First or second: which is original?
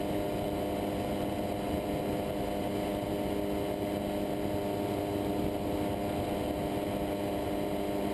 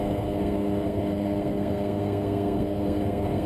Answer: first